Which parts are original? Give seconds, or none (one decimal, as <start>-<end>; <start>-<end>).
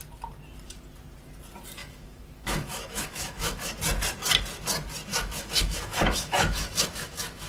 0.0-1.8; 3.7-5.1